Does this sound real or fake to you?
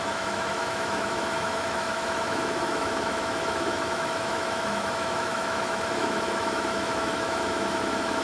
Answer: fake